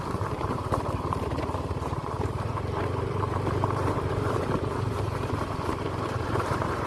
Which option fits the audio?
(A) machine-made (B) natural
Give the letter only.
A